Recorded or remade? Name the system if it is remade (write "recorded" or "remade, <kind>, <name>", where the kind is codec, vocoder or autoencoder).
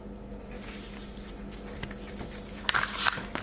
recorded